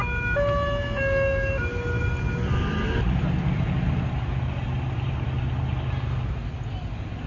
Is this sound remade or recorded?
recorded